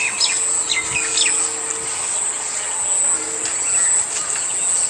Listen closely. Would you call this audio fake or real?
real